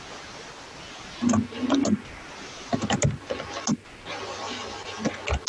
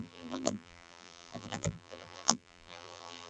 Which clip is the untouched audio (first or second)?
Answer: first